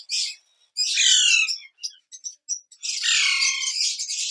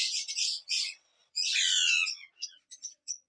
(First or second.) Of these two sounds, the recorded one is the first